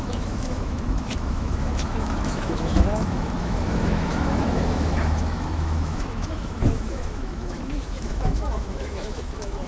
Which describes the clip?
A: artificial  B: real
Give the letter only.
A